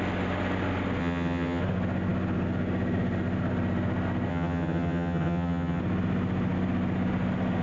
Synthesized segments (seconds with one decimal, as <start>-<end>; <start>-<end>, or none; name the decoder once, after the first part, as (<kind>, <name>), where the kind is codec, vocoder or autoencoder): 1.0-1.6 (vocoder, HiFi-GAN); 4.3-5.8